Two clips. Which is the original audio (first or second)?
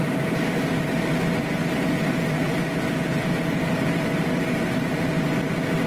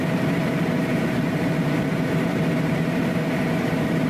first